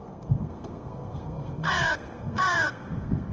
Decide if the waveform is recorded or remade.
remade